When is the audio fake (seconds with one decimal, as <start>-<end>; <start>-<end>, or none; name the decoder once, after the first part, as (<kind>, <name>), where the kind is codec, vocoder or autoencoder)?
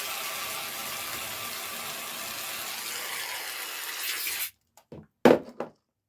none